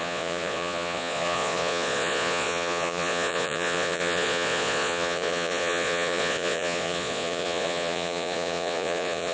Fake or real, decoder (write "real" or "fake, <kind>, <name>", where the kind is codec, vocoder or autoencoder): fake, vocoder, Vocos